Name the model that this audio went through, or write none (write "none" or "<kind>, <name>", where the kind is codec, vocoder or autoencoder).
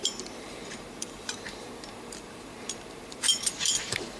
vocoder, BigVGAN v2